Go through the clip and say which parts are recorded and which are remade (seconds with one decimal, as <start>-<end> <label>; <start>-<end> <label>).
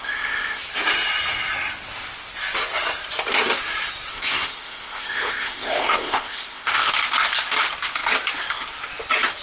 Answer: 0.0-0.6 remade; 0.6-4.1 recorded; 4.1-6.9 remade; 6.9-9.4 recorded